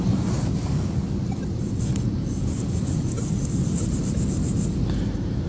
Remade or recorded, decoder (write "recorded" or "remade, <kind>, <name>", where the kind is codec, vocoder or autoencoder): recorded